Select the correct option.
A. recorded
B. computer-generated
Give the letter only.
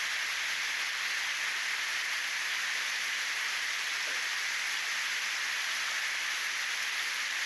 A